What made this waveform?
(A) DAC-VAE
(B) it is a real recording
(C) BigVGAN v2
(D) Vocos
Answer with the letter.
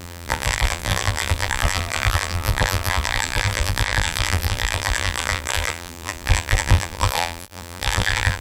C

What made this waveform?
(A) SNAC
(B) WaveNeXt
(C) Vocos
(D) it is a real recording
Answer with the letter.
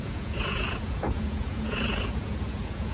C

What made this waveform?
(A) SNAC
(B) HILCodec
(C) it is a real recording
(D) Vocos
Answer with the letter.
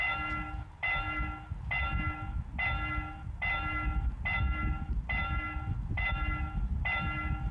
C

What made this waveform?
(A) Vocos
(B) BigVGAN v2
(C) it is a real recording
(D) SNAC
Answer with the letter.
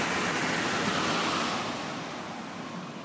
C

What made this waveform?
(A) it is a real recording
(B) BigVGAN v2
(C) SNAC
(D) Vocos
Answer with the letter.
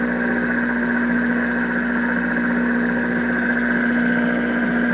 A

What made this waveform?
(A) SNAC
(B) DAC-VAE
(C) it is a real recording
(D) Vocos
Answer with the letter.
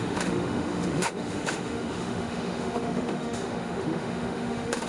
B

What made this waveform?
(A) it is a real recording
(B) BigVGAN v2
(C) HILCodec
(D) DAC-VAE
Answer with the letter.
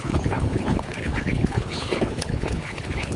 C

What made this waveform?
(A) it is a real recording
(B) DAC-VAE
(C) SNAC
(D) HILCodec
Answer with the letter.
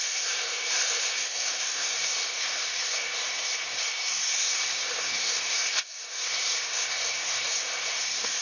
C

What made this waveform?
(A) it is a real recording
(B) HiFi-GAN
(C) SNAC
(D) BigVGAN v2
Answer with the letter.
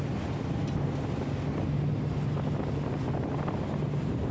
A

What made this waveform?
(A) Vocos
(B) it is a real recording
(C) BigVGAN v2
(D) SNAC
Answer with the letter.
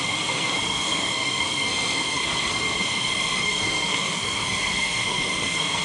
D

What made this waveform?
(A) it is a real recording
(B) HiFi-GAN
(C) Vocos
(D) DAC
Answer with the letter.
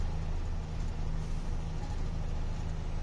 A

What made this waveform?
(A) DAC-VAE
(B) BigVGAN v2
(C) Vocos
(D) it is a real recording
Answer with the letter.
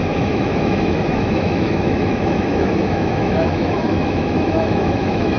A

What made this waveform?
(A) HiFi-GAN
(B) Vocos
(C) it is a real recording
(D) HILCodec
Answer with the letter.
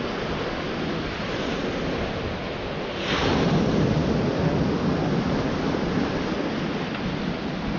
C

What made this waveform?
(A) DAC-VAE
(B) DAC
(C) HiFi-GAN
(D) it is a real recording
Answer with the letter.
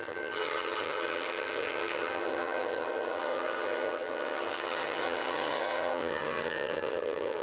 C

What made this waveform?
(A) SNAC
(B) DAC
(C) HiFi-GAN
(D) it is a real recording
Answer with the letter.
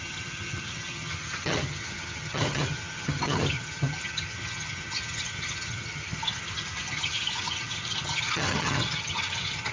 C